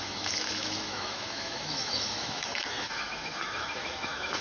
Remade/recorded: remade